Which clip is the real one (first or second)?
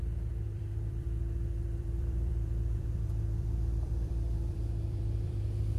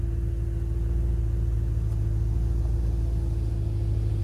second